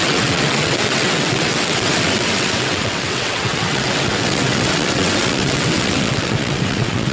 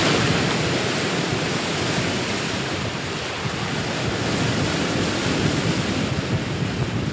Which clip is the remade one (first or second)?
first